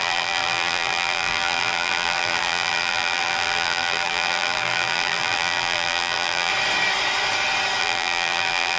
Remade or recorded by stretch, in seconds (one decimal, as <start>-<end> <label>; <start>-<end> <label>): 0.0-6.5 remade; 6.5-7.8 recorded; 7.8-8.8 remade